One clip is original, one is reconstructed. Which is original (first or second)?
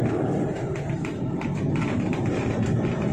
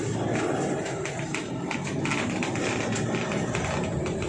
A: second